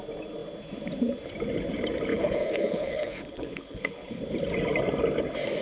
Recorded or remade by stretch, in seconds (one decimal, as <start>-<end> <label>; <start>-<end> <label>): 0.0-2.1 recorded; 2.1-4.2 remade; 4.2-5.6 recorded